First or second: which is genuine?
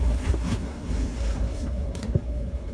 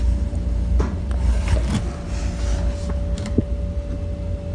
second